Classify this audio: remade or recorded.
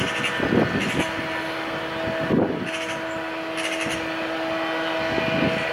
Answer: recorded